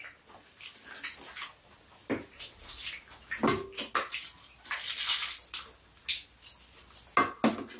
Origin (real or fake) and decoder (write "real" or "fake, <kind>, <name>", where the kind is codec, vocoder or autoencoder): real